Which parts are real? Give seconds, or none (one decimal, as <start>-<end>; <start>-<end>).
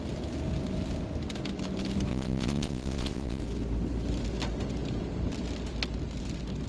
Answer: 0.0-2.1; 3.4-6.7